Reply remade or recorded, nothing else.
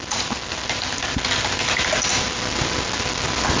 recorded